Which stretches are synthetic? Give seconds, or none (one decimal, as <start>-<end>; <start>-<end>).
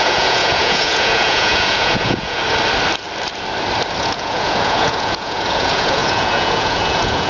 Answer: 0.0-2.4; 4.0-7.3